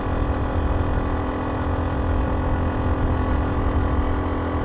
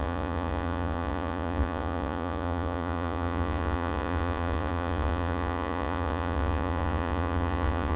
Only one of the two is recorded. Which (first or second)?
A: first